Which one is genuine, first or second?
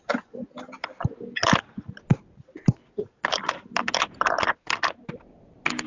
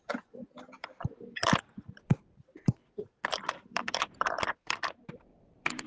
first